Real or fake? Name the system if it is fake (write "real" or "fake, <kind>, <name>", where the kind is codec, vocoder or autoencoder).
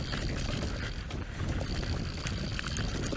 real